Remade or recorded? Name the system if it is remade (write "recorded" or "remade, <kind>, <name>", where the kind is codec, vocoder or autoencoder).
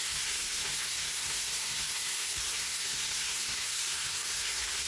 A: remade, codec, SNAC